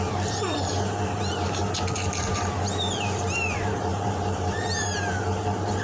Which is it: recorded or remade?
remade